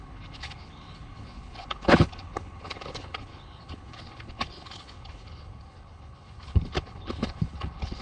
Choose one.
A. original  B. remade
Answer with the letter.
B